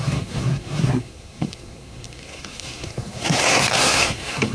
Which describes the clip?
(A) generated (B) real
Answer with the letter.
A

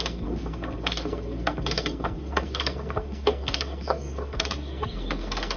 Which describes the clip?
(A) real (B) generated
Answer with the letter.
B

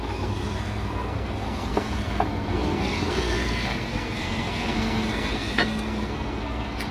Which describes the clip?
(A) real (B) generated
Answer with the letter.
B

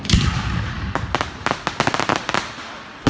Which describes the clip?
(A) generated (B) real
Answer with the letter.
B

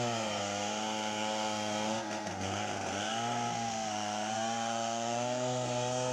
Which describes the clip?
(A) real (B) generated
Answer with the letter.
B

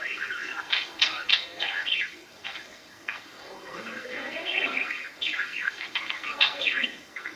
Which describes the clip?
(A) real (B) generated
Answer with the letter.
B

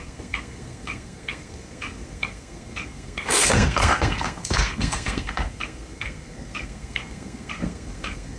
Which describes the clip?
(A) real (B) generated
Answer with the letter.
B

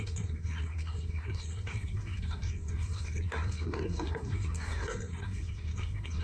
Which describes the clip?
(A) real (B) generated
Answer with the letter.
B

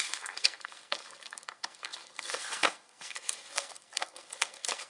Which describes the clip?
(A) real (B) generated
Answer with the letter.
B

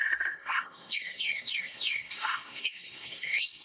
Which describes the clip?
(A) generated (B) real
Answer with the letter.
A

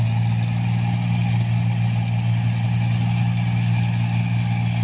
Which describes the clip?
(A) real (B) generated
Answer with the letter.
A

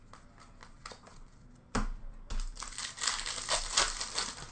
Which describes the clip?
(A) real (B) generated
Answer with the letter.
A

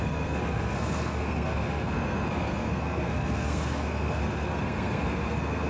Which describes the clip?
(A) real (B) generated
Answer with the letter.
B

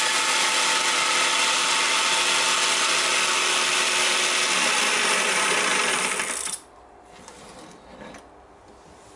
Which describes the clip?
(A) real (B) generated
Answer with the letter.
A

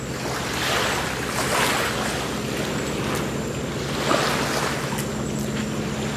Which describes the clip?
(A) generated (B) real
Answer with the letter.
B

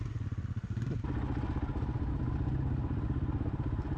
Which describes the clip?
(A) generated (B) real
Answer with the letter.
B